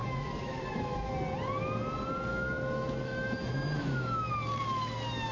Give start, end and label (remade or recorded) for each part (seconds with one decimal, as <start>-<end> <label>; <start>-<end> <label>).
0.0-1.1 remade; 1.1-2.3 recorded; 2.3-4.3 remade; 4.3-5.3 recorded